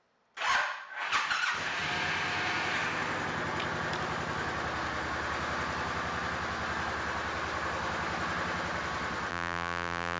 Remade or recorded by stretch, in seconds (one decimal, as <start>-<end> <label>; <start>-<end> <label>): 0.0-9.3 recorded; 9.3-10.2 remade